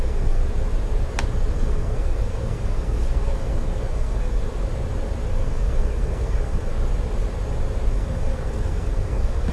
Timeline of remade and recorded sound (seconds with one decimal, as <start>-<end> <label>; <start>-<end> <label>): 0.0-0.4 remade; 0.4-1.5 recorded; 1.5-4.4 remade; 4.4-5.3 recorded; 5.3-6.7 remade; 6.7-7.9 recorded; 7.9-9.5 remade